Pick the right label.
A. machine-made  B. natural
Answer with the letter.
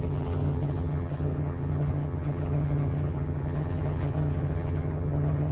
A